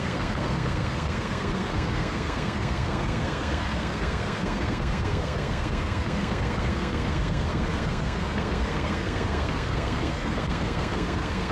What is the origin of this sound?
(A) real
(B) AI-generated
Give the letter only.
B